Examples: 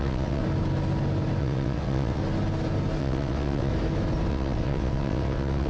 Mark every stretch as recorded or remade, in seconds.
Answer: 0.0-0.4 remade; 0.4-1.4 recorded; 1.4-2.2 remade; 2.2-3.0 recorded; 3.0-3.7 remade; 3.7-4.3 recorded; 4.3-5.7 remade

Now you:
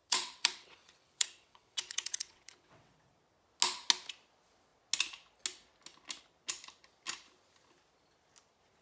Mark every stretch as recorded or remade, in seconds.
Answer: 0.0-3.1 remade; 3.1-8.8 recorded

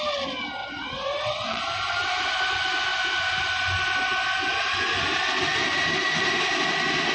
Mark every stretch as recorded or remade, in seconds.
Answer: 0.0-0.6 recorded; 0.6-1.6 remade; 1.6-7.1 recorded

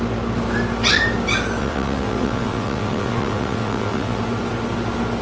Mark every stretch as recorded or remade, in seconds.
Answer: 0.0-1.6 recorded; 1.6-4.2 remade; 4.2-5.2 recorded

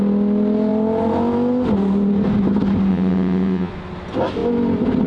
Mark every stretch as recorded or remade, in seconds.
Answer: 0.0-2.9 recorded; 2.9-3.7 remade; 3.7-5.1 recorded